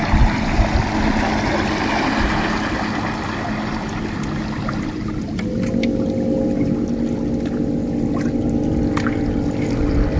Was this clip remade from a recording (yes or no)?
no